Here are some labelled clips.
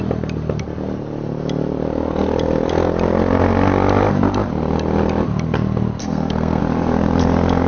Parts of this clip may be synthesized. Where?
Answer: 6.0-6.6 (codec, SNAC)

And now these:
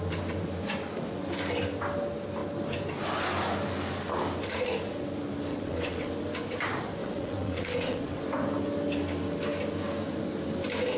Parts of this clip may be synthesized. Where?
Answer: 5.5-6.1 (vocoder, WaveNeXt); 7.0-8.2

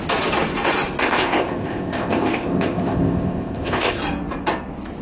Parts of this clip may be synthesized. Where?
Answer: 1.0-4.0 (codec, ZipCodec)

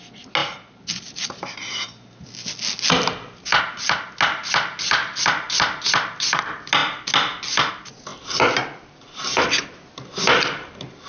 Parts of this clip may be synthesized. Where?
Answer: none

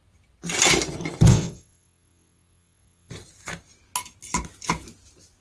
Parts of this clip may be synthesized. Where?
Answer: 1.3-3.1 (vocoder, WaveNeXt)